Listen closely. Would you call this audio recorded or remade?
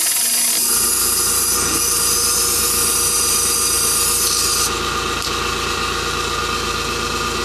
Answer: recorded